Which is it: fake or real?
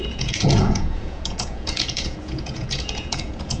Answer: fake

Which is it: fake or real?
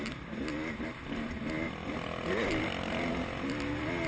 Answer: real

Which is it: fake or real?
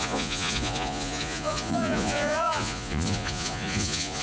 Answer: fake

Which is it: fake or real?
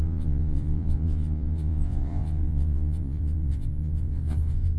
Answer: fake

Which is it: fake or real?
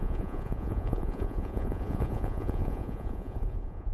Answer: fake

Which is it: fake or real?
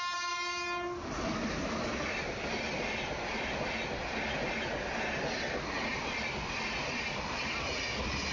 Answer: real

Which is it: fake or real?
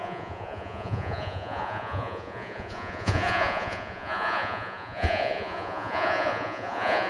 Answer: fake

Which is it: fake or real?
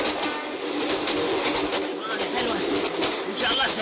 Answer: real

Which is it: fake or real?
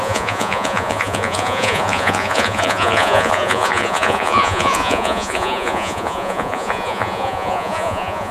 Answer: fake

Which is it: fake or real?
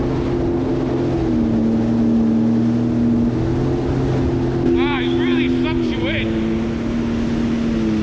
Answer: real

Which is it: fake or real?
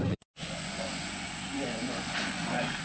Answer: fake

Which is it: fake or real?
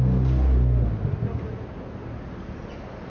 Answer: real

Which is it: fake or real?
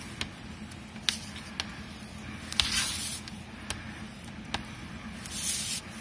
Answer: real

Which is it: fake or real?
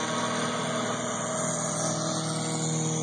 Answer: real